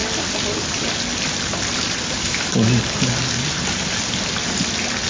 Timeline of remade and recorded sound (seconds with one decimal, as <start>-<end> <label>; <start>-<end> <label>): 0.0-5.1 recorded